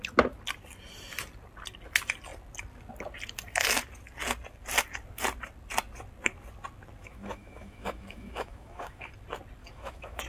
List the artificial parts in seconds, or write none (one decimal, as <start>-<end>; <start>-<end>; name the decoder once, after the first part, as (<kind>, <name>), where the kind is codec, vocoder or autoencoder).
7.0-9.1 (autoencoder, DAC-VAE); 9.6-10.3